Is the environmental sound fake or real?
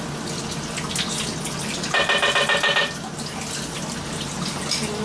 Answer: real